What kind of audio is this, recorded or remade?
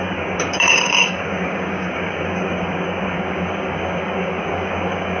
remade